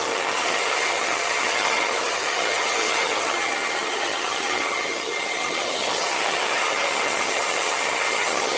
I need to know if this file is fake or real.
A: fake